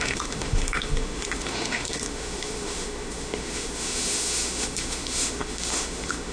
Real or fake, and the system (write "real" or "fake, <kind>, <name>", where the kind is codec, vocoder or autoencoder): fake, autoencoder, DAC-VAE